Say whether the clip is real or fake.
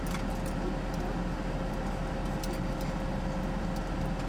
real